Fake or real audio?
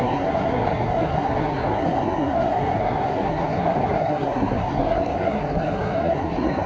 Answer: fake